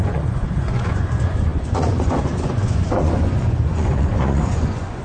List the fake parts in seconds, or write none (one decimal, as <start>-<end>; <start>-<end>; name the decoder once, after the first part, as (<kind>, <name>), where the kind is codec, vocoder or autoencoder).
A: 0.0-5.0 (vocoder, Vocos)